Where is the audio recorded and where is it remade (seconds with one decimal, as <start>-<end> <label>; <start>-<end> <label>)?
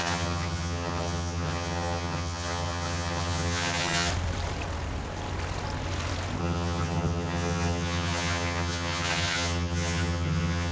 0.0-4.1 remade; 4.1-6.4 recorded; 6.4-10.7 remade